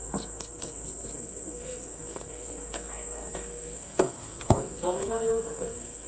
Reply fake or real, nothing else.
fake